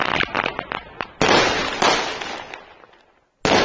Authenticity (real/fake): real